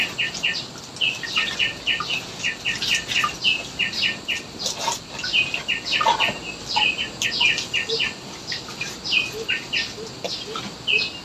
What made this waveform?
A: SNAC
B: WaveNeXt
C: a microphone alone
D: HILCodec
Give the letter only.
C